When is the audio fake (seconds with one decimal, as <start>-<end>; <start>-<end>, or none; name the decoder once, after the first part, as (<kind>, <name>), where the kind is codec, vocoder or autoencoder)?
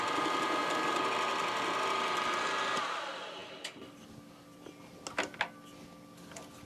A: none